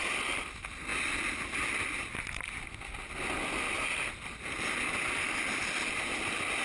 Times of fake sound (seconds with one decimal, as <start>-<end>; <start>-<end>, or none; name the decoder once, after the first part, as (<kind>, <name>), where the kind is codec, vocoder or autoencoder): none